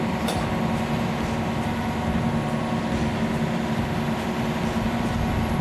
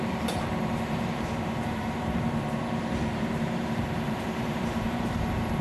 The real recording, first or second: first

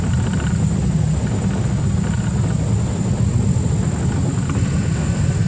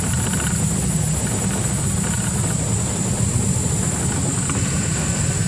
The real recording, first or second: first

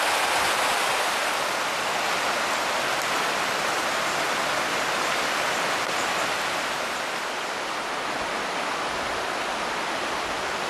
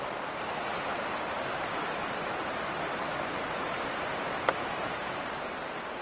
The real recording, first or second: first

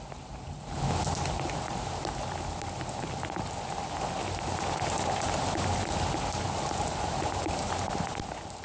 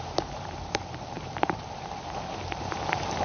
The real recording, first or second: first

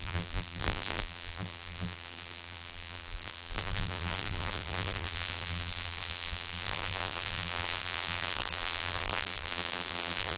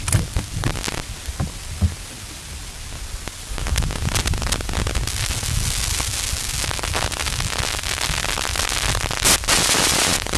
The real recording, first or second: second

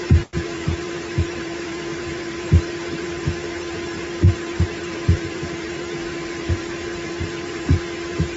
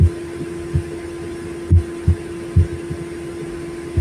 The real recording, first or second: second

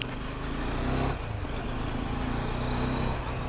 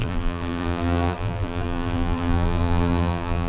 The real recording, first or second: first